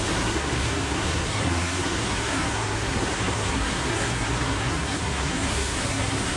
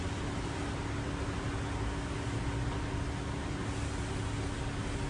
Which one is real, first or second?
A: second